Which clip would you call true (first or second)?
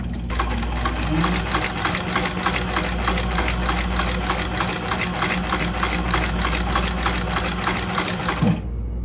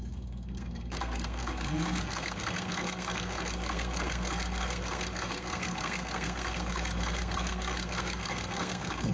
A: first